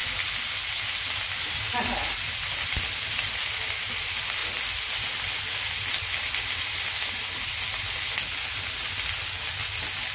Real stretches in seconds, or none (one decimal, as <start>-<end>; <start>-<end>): 0.0-10.1